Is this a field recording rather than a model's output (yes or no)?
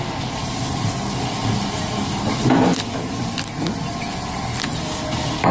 yes